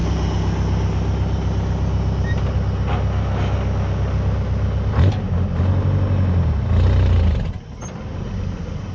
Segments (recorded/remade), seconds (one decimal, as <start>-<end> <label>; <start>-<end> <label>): 0.0-8.9 recorded